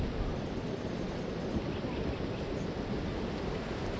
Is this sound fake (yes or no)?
no